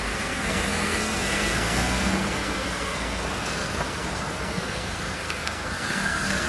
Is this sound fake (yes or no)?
yes